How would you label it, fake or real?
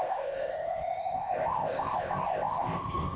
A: fake